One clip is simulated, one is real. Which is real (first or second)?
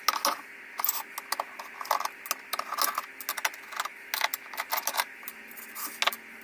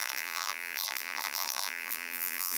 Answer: first